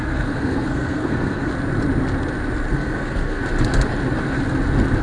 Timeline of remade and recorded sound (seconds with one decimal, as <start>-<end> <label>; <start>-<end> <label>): 0.0-1.5 remade; 1.5-2.7 recorded; 2.7-3.4 remade; 3.4-5.0 recorded